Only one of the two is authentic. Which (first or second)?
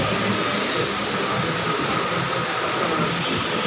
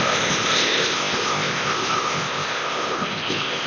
first